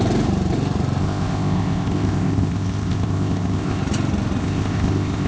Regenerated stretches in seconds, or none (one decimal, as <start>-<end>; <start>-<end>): 1.0-3.8; 4.4-5.3